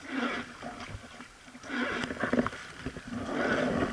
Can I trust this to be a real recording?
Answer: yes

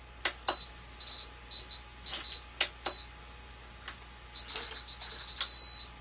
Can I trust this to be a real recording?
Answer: yes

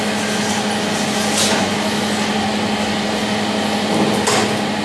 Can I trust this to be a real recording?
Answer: yes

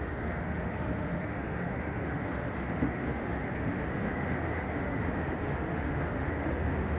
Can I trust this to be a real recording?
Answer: no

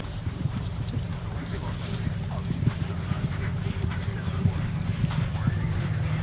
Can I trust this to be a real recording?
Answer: no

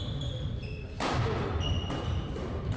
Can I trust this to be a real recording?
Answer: yes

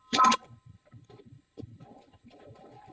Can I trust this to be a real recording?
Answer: no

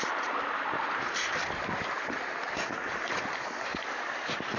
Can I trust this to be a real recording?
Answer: yes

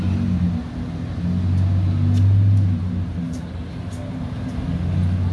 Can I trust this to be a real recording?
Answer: yes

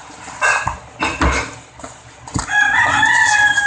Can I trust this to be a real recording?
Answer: yes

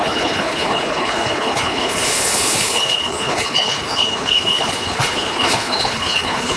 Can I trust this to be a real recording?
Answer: no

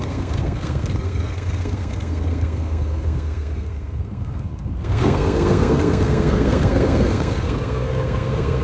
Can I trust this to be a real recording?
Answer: no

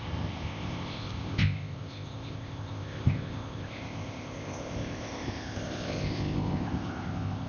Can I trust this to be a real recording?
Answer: no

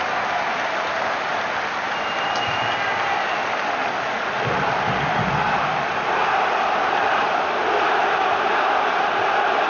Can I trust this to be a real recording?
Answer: yes